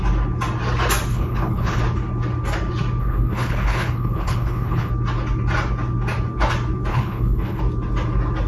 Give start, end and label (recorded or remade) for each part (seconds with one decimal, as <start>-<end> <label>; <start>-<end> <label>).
0.0-1.1 recorded; 1.1-1.8 remade; 1.8-3.0 recorded; 3.0-4.9 remade; 4.9-6.9 recorded; 6.9-7.6 remade; 7.6-8.5 recorded